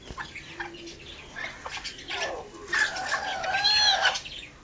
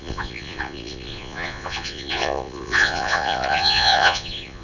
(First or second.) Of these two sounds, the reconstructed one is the second